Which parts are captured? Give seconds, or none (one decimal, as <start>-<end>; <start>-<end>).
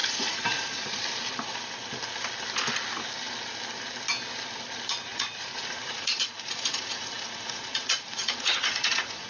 1.0-5.1